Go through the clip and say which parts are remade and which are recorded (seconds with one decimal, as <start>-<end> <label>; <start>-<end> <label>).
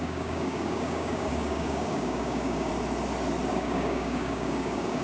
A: 0.0-2.7 remade; 2.7-3.5 recorded; 3.5-5.0 remade